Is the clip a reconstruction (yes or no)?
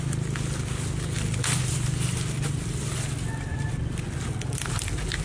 no